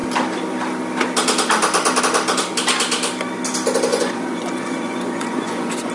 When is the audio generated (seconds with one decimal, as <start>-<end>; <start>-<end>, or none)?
3.9-5.9